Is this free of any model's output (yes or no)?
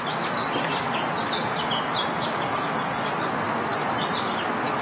yes